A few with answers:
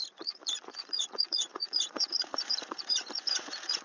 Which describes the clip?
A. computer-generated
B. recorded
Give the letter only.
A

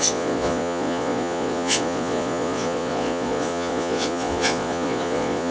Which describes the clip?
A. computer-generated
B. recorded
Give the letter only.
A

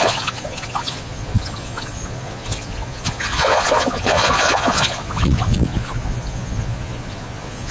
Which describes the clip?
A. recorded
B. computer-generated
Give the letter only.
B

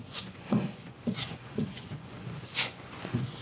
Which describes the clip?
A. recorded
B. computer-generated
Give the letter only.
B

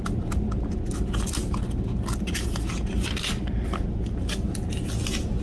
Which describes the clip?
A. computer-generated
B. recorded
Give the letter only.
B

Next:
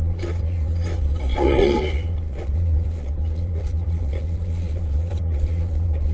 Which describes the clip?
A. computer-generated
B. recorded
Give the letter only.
A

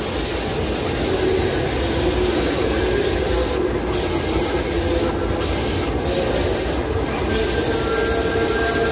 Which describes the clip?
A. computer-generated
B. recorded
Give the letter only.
B